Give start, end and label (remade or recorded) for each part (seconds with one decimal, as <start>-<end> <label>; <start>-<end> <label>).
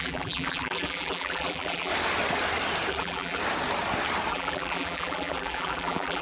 0.0-1.9 remade; 1.9-2.9 recorded; 2.9-3.4 remade; 3.4-4.3 recorded; 4.3-6.2 remade